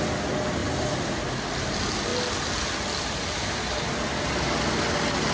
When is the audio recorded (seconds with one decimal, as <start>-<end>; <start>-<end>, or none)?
0.0-5.3